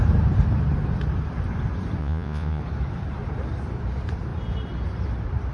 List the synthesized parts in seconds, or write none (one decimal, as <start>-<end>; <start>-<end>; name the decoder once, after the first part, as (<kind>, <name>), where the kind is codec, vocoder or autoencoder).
2.0-2.6 (vocoder, Vocos)